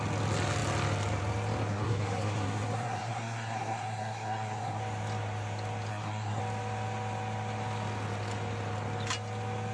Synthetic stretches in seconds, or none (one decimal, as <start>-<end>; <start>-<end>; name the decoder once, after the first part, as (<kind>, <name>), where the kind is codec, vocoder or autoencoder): 1.7-4.8 (codec, SNAC); 5.9-6.4